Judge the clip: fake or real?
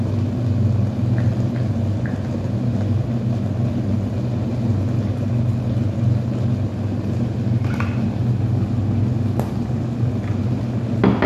real